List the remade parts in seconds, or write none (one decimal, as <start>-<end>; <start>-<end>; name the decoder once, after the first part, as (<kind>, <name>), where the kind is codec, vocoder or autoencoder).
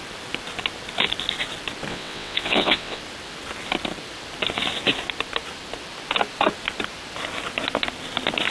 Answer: 1.9-3.0 (vocoder, WaveNeXt)